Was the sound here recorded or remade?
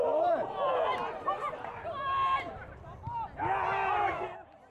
recorded